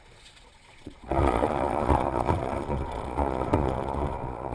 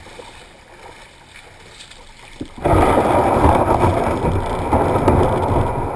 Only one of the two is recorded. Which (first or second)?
second